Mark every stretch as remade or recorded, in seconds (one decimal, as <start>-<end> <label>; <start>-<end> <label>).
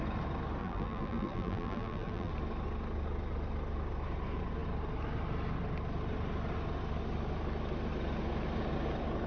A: 0.0-0.6 recorded; 0.6-2.3 remade; 2.3-9.3 recorded